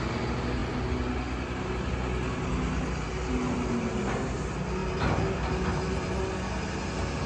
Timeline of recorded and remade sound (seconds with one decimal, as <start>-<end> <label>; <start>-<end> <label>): 0.0-4.8 recorded; 4.8-5.3 remade; 5.3-5.7 recorded; 5.7-6.2 remade; 6.2-7.3 recorded